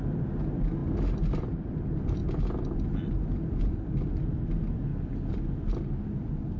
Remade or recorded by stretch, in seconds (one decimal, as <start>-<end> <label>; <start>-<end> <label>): 0.0-0.8 remade; 0.8-1.4 recorded; 1.4-2.2 remade; 2.2-3.6 recorded; 3.6-4.9 remade; 4.9-6.6 recorded